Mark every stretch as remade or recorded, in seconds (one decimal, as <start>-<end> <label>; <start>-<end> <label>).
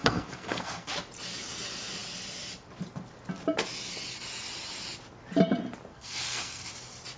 0.0-0.9 remade; 0.9-5.9 recorded; 5.9-6.7 remade; 6.7-7.2 recorded